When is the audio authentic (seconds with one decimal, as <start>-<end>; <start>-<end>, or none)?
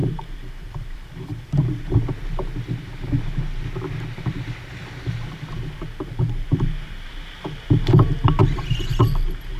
1.7-8.4; 9.0-9.6